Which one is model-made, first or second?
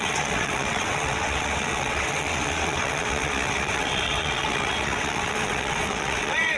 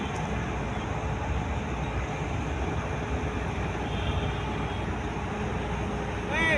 first